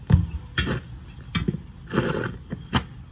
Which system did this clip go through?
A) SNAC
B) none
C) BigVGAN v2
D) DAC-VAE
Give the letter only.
B